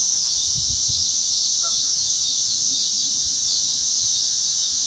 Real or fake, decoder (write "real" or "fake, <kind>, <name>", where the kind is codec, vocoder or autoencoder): fake, autoencoder, DAC-VAE